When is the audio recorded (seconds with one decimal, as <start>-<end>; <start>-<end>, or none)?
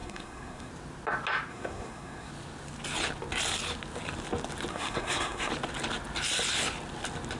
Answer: 0.7-1.5; 2.3-4.7; 5.5-7.4